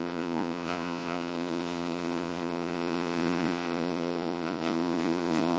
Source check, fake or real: fake